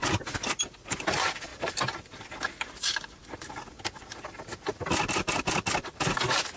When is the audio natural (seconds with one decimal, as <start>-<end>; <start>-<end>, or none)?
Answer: 0.0-6.6